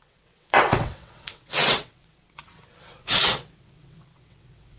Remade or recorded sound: remade